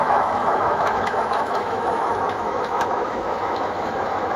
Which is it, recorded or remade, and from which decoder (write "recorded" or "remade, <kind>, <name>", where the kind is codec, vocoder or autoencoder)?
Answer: remade, autoencoder, DAC-VAE